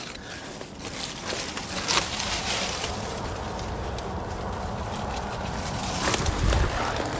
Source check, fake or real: real